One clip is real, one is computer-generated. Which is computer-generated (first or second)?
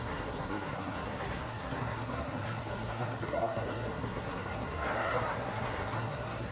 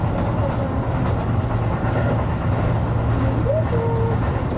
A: first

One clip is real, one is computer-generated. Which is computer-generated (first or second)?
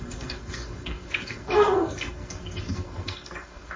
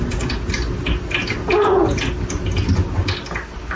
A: first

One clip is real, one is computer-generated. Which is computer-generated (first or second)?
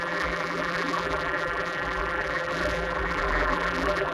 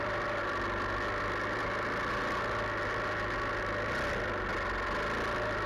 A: first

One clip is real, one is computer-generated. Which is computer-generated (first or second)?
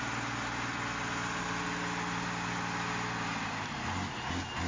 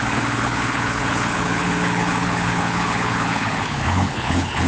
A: second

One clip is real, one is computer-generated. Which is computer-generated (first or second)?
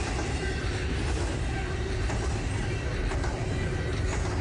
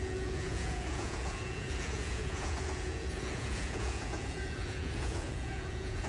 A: second